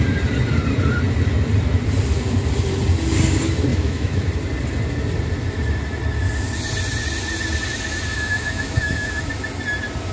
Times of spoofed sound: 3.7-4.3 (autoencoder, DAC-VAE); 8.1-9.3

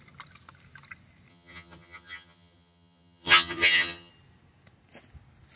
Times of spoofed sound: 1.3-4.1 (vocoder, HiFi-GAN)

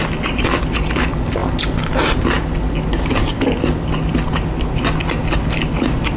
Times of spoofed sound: none

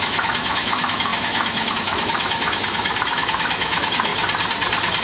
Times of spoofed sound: 0.0-4.1 (autoencoder, DAC-VAE)

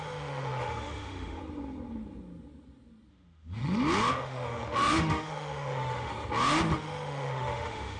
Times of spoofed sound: 0.0-1.4 (autoencoder, DAC-VAE); 3.1-3.6; 4.1-6.1; 6.7-8.0

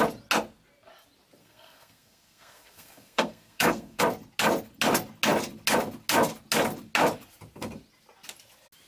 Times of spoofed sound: 1.4-4.0 (codec, SNAC)